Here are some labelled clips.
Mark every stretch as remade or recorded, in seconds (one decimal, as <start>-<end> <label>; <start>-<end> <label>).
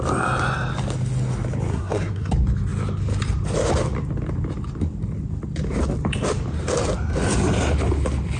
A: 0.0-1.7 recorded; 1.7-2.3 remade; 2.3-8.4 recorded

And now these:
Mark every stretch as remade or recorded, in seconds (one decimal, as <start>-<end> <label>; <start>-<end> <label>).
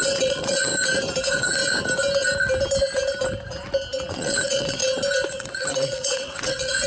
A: 0.0-0.7 remade; 0.7-1.2 recorded; 1.2-1.6 remade; 1.6-4.1 recorded; 4.1-4.8 remade; 4.8-5.3 recorded; 5.3-6.9 remade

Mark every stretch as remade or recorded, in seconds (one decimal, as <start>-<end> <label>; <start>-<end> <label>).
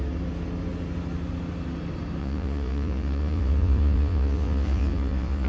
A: 0.0-2.2 recorded; 2.2-5.5 remade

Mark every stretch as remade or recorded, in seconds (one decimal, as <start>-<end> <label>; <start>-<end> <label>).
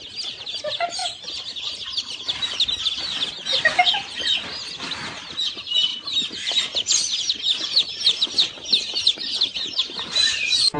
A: 0.0-1.0 recorded; 1.0-2.8 remade; 2.8-5.9 recorded; 5.9-10.8 remade